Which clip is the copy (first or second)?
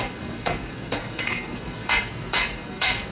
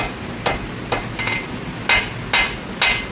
first